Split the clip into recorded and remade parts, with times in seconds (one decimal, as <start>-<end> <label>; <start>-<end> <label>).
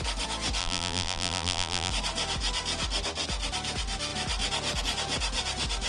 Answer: 0.0-0.6 recorded; 0.6-1.9 remade; 1.9-5.9 recorded